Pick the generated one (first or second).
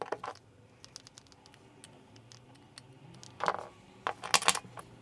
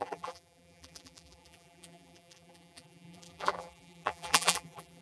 second